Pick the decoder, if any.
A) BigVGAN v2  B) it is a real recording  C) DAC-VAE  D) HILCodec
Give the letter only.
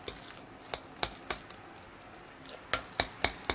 B